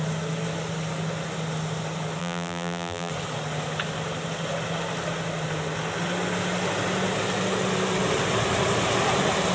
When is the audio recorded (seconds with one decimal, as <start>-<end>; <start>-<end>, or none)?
0.0-2.2; 3.1-9.5